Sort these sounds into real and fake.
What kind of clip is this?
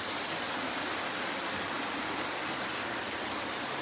real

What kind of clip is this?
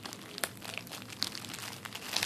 real